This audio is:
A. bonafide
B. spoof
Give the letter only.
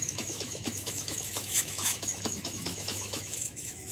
B